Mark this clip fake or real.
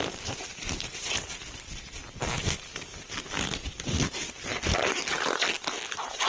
real